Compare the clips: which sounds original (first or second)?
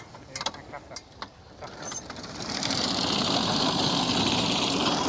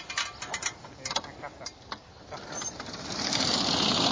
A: second